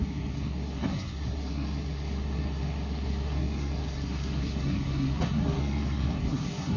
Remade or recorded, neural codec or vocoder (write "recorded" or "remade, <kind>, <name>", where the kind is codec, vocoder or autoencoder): remade, codec, SNAC